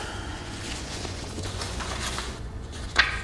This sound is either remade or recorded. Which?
remade